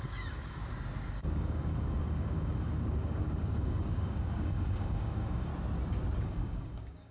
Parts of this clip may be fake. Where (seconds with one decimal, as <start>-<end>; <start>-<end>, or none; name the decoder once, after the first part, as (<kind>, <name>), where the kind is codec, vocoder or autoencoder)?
0.0-0.6 (codec, DAC); 1.1-5.5; 6.2-7.1